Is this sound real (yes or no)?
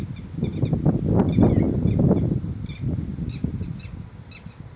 yes